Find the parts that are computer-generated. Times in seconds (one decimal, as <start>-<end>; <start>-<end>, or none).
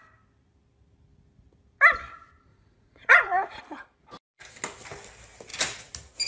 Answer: 2.5-3.6